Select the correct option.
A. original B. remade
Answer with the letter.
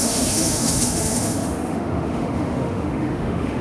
B